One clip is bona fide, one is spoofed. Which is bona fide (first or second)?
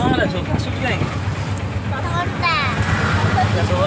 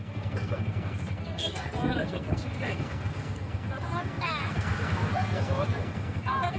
first